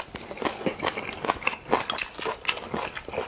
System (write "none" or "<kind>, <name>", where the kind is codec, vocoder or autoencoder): none